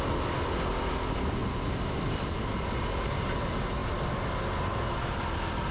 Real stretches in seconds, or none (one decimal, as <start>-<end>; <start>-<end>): 0.0-5.7